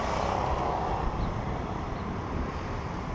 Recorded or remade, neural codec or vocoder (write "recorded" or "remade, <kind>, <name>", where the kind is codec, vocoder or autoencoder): recorded